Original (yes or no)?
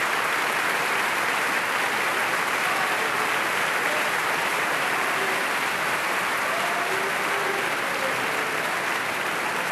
yes